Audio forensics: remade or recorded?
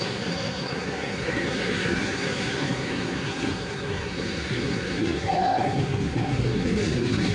remade